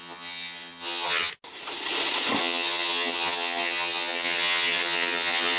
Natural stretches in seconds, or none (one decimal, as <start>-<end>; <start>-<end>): 1.3-2.4